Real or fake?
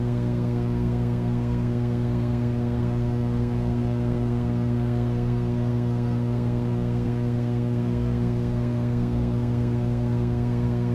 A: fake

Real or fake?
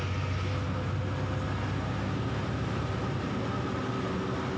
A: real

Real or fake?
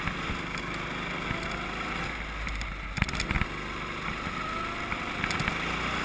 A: real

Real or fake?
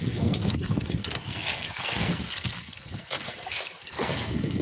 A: fake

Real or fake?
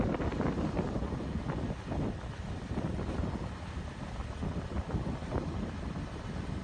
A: real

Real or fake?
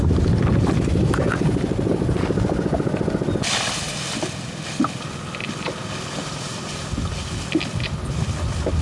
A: real